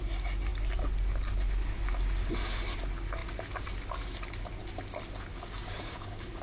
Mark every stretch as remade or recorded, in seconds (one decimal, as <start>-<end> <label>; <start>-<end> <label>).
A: 0.0-5.3 recorded; 5.3-6.4 remade